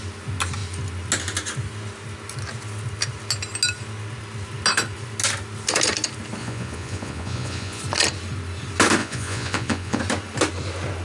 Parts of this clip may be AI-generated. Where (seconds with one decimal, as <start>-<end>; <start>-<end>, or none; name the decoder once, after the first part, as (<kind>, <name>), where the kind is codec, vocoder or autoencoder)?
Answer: 6.4-7.8 (vocoder, Vocos); 9.0-10.0